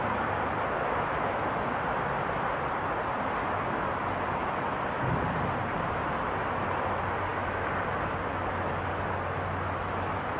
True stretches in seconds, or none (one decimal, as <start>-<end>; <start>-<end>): 0.0-10.4